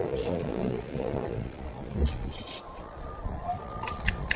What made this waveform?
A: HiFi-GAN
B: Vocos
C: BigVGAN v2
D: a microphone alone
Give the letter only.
B